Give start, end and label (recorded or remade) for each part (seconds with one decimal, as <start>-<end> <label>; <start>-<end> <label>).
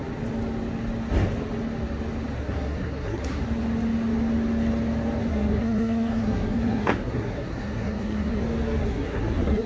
0.0-2.4 recorded; 2.4-3.4 remade; 3.4-5.2 recorded; 5.2-8.4 remade; 8.4-8.8 recorded; 8.8-9.7 remade